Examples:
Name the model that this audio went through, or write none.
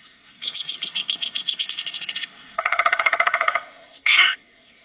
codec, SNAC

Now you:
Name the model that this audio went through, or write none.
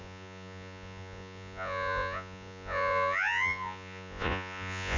vocoder, Vocos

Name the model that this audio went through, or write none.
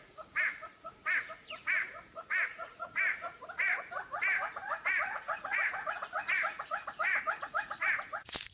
vocoder, Vocos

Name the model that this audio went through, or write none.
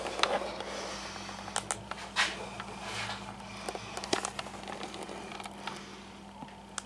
none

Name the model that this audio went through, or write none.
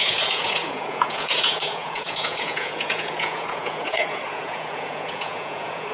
vocoder, Vocos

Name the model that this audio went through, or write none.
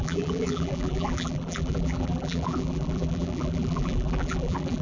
vocoder, BigVGAN v2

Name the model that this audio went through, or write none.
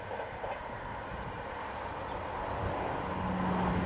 none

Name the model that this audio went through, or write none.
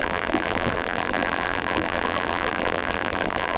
vocoder, BigVGAN v2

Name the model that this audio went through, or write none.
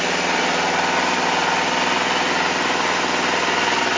none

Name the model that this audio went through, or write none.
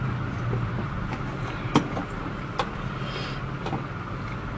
none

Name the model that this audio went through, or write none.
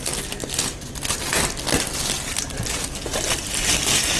none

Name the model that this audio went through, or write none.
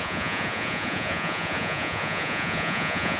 vocoder, Vocos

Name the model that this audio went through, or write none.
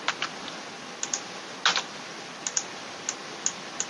none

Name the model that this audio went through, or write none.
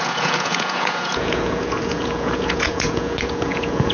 vocoder, Vocos